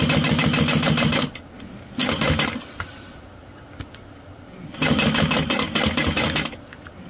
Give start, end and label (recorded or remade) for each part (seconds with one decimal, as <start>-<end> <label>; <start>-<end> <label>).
0.0-7.1 recorded